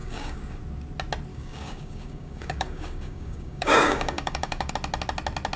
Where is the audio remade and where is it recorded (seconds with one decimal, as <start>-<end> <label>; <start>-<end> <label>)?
0.0-0.6 remade; 0.6-1.3 recorded; 1.3-4.7 remade; 4.7-5.6 recorded